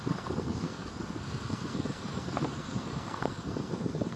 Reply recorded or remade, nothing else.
remade